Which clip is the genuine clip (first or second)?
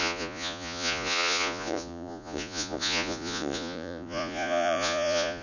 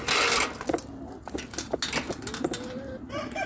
second